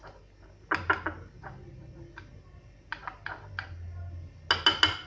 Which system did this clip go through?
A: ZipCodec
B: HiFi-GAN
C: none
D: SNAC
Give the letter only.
C